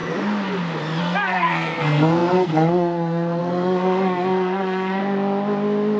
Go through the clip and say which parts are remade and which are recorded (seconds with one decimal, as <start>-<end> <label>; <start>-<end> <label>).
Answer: 0.0-1.0 recorded; 1.0-5.0 remade; 5.0-6.0 recorded